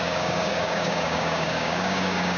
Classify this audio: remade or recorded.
remade